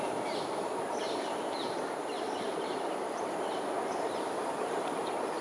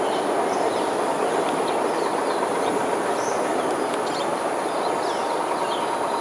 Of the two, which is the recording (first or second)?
second